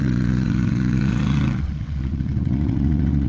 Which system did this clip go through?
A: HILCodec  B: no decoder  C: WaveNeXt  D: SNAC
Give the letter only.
C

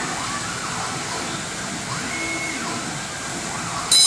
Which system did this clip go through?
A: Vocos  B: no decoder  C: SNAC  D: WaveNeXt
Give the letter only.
B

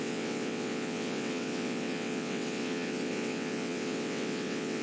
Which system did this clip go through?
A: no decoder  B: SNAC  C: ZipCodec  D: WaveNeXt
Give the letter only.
D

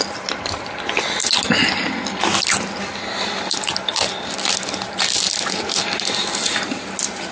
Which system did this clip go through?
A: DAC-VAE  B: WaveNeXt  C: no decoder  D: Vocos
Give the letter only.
C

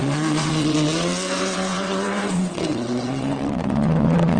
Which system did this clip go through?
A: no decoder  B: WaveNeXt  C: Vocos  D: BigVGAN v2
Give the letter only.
B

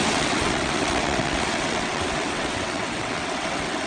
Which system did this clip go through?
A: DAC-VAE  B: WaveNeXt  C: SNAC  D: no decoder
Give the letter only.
B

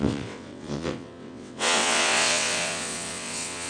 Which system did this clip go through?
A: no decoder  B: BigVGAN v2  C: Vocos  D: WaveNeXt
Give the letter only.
D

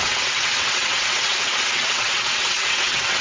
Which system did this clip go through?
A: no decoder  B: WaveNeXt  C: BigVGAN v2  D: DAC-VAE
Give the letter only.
B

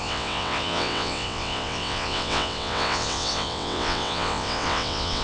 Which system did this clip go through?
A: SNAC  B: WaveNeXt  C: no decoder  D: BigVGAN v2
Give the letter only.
B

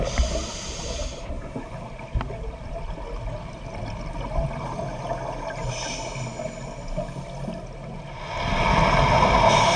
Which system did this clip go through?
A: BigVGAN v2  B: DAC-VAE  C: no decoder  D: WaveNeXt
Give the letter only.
C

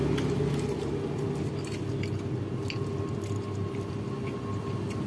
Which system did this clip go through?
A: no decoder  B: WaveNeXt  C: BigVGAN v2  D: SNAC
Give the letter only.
A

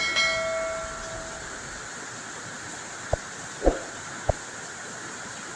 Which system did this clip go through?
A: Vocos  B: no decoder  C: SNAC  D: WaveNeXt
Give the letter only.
B